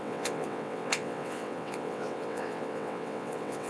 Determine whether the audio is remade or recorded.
remade